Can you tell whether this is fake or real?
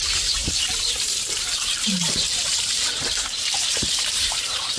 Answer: fake